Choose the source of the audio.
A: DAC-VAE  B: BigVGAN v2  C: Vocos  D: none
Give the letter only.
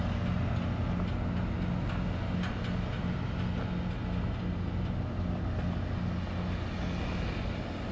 D